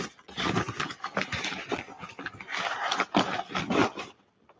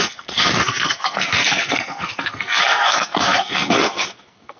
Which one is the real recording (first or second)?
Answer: first